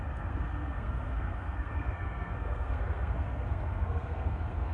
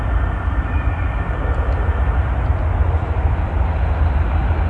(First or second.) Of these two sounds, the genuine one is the second